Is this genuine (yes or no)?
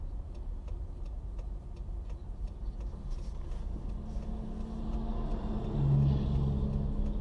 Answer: yes